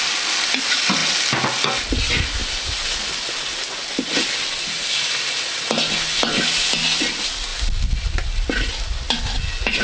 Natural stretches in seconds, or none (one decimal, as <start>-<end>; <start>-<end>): 0.0-9.8

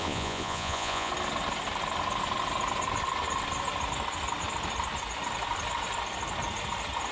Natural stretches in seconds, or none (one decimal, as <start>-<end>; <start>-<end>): 1.1-7.1

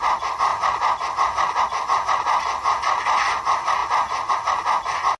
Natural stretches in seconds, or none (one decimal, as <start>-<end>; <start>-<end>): 0.0-5.2

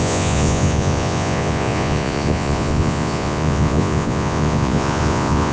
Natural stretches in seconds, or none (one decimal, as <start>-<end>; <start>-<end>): none

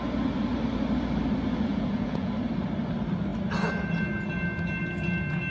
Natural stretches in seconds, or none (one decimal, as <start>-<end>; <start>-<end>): 0.0-1.7; 2.3-5.5

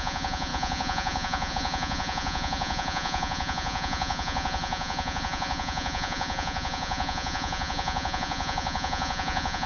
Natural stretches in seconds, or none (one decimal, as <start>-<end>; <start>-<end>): none

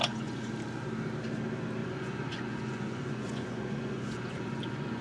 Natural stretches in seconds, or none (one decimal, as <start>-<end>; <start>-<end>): 0.5-1.8

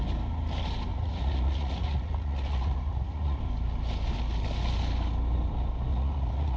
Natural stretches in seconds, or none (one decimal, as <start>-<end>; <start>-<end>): 0.0-0.9; 3.4-5.9